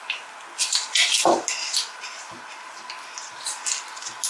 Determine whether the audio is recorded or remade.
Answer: recorded